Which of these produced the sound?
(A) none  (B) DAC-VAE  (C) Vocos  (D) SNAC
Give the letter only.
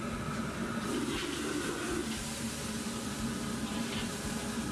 A